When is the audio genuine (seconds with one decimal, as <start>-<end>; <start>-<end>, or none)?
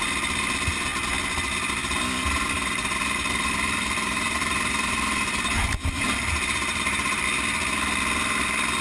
0.0-2.2; 7.2-8.8